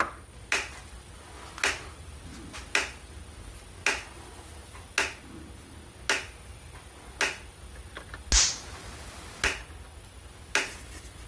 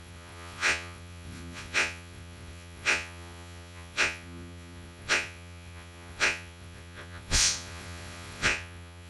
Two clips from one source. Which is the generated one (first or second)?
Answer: second